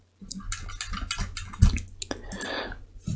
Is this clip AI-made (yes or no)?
no